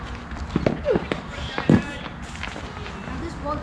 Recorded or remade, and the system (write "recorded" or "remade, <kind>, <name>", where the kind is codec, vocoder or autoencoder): recorded